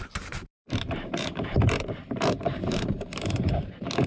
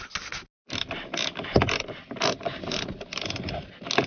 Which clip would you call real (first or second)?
second